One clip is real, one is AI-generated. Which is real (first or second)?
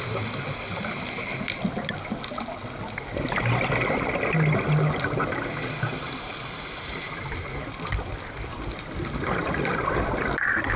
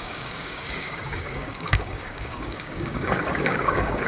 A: first